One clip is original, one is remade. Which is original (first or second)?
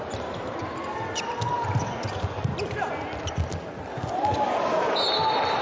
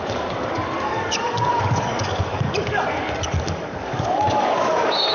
first